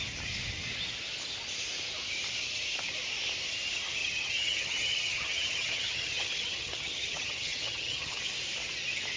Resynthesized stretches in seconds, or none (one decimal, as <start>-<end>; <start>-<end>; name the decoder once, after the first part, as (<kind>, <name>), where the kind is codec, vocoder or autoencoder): 4.0-8.2 (vocoder, HiFi-GAN)